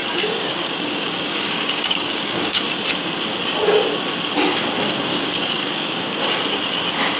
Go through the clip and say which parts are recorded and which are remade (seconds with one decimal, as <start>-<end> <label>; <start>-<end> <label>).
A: 0.0-2.7 remade; 2.7-5.1 recorded; 5.1-6.2 remade; 6.2-7.2 recorded